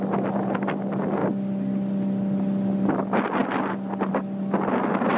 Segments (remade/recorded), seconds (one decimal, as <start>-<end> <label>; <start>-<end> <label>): 0.0-5.2 recorded